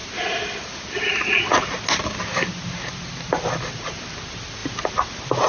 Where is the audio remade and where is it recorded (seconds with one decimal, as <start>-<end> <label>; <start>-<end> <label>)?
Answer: 0.0-5.5 recorded